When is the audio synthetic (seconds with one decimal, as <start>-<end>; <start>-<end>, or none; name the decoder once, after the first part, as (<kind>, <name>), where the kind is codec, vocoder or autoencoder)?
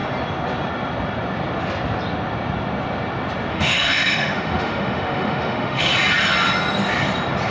3.5-5.9 (autoencoder, DAC-VAE)